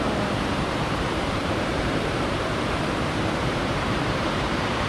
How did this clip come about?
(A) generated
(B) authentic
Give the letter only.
A